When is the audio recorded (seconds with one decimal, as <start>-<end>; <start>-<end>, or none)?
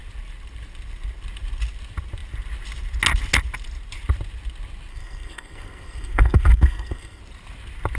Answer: 0.0-4.9; 7.2-8.0